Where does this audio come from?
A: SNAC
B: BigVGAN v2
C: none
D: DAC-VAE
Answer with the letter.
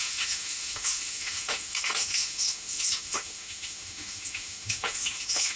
D